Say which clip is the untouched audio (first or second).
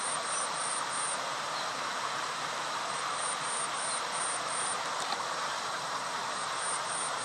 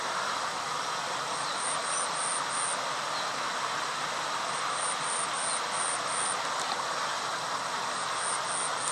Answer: second